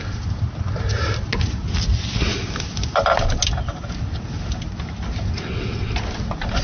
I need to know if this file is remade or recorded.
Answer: recorded